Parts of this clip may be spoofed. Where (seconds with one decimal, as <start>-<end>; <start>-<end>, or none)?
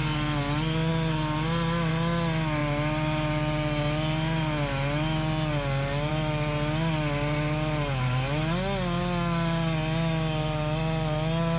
none